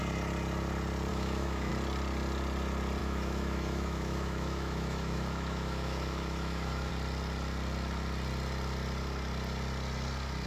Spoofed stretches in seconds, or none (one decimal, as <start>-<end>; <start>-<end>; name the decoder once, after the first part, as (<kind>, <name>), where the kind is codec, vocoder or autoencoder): 1.1-1.7 (autoencoder, DAC-VAE); 3.0-6.9